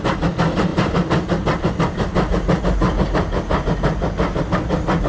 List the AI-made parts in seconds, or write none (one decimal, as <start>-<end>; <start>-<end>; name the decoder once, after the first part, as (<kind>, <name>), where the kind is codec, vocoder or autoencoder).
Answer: none